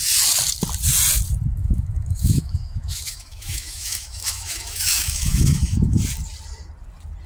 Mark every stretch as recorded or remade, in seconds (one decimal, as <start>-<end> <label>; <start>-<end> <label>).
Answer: 0.0-1.6 recorded; 1.6-6.0 remade; 6.0-7.3 recorded